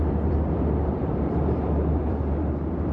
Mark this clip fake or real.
fake